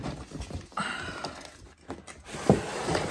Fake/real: real